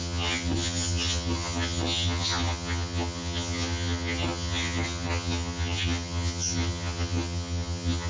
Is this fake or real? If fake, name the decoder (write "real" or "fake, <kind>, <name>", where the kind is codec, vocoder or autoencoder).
fake, vocoder, HiFi-GAN